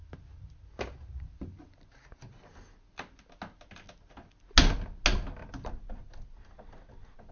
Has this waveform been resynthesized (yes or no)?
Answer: no